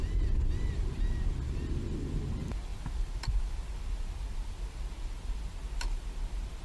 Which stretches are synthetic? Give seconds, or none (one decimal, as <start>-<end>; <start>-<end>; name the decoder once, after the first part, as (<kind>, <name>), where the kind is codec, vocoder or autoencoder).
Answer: none